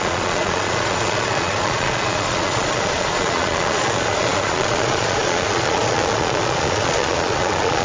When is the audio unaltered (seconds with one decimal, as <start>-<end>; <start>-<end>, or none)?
none